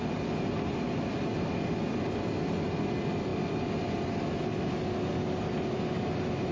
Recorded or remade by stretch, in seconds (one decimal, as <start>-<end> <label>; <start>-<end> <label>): 0.0-6.5 recorded